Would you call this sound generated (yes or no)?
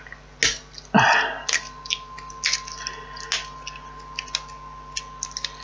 no